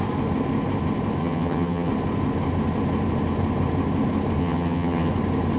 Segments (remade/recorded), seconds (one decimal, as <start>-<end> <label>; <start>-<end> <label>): 0.0-1.2 recorded; 1.2-1.9 remade; 1.9-4.4 recorded; 4.4-5.1 remade; 5.1-5.6 recorded